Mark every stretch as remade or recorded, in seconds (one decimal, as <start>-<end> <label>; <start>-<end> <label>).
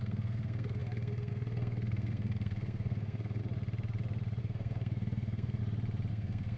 0.0-3.4 remade; 3.4-4.4 recorded; 4.4-5.6 remade; 5.6-6.1 recorded; 6.1-6.6 remade